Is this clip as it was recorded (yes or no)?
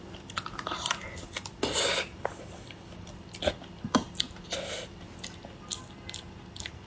yes